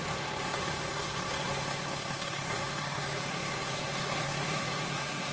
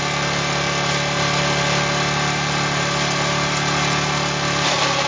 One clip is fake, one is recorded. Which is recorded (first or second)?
second